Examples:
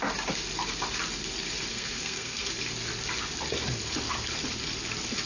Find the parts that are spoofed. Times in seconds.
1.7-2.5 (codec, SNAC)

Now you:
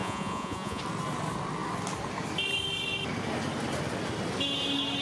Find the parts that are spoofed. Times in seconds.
0.0-0.8 (vocoder, Vocos)

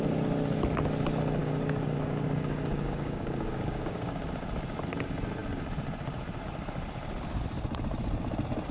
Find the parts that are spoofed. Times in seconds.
1.4-4.2 (codec, DAC)

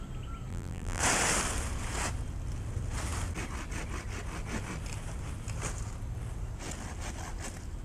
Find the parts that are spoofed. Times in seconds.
0.5-1.0 (vocoder, BigVGAN v2)

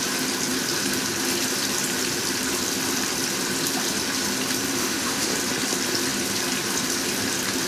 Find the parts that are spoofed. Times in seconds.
4.8-5.3 (autoencoder, DAC-VAE)

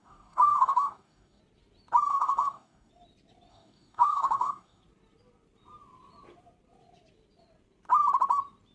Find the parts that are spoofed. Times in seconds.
0.0-1.4 (codec, DAC); 2.1-2.9; 3.5-4.8

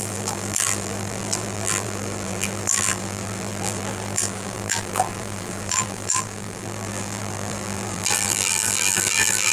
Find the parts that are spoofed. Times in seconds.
0.0-9.5 (vocoder, BigVGAN v2)